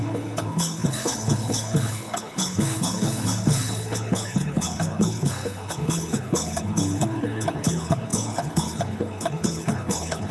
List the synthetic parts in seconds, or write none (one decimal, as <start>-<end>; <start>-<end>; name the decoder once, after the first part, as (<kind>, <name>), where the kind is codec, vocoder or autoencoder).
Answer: 0.0-10.3 (codec, HILCodec)